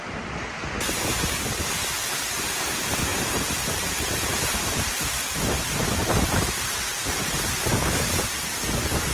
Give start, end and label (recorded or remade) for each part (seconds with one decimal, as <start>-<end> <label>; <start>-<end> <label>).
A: 0.0-3.1 recorded; 3.1-4.9 remade; 4.9-6.0 recorded; 6.0-6.8 remade; 6.8-9.1 recorded